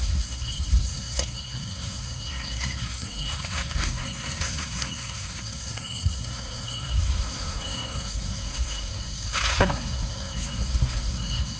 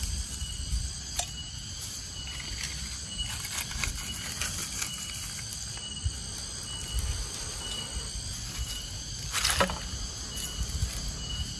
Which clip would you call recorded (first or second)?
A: second